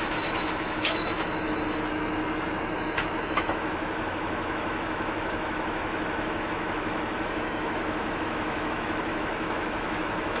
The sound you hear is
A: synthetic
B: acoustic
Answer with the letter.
A